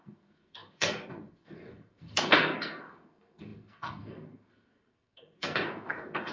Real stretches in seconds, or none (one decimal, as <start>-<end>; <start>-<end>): none